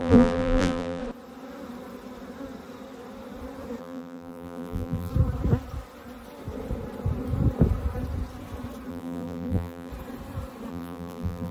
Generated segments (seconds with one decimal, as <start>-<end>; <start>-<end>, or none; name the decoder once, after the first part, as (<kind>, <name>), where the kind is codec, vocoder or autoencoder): 0.0-1.0 (vocoder, BigVGAN v2); 3.8-5.1; 8.9-9.9; 10.7-11.5